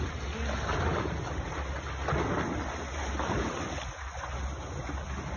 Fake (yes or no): no